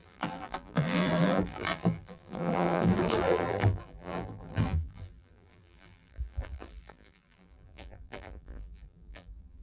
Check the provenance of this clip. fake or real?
fake